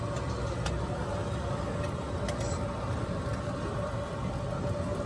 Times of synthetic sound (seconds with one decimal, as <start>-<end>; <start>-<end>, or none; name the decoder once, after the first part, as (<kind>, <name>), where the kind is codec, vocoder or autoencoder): none